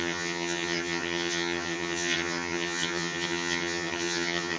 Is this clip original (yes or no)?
no